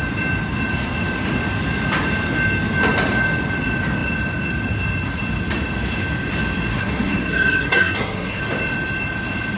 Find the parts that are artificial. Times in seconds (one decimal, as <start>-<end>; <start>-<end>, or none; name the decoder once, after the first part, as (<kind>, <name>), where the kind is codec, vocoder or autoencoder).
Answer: 6.7-8.4 (codec, SNAC)